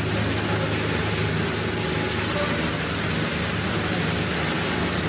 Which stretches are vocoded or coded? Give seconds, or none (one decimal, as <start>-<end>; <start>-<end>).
none